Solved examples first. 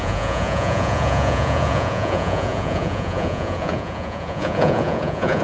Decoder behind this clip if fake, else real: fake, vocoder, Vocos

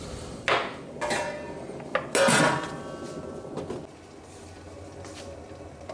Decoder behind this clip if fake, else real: real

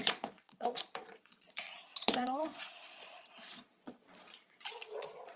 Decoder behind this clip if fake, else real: fake, vocoder, Vocos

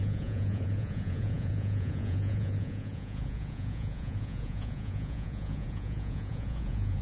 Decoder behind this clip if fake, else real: fake, vocoder, Vocos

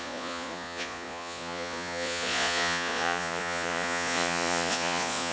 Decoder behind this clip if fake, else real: fake, vocoder, Vocos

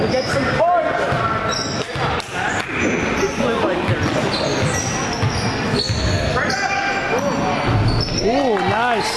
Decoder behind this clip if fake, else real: real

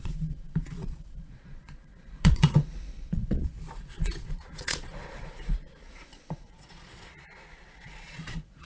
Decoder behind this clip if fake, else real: fake, vocoder, Vocos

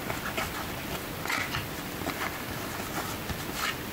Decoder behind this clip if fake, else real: real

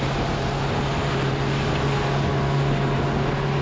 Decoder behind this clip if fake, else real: real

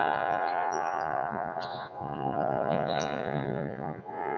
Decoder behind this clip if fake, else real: fake, vocoder, Vocos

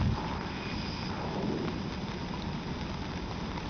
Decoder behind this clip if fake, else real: real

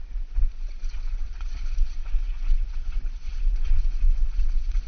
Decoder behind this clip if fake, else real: fake, vocoder, Vocos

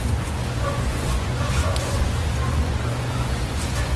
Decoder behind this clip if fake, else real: fake, vocoder, Vocos